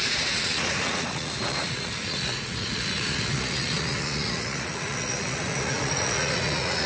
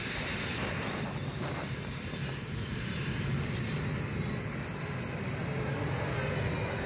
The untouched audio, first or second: second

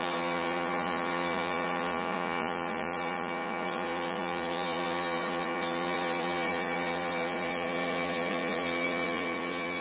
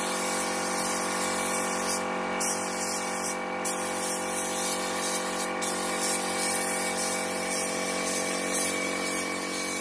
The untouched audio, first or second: second